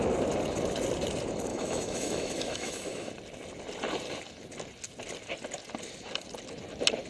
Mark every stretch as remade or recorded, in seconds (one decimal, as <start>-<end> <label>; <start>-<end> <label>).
0.0-1.5 recorded; 1.5-3.1 remade; 3.1-7.1 recorded